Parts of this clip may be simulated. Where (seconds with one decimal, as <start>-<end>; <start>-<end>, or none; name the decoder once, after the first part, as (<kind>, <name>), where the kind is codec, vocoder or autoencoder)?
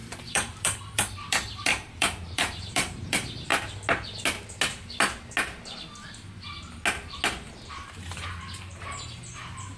0.0-3.5 (vocoder, BigVGAN v2); 7.7-9.8